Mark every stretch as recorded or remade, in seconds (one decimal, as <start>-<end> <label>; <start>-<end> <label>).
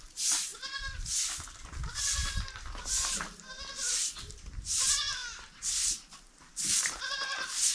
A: 0.0-2.2 remade; 2.2-3.7 recorded; 3.7-5.2 remade; 5.2-6.5 recorded; 6.5-7.7 remade